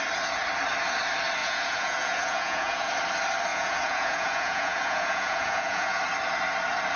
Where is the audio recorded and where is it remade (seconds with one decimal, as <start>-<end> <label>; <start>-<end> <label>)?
0.0-1.4 recorded; 1.4-2.9 remade; 2.9-3.5 recorded; 3.5-6.0 remade; 6.0-7.0 recorded